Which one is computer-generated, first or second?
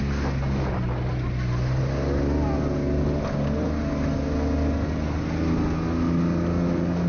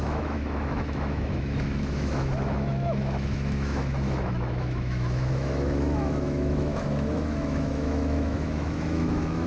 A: second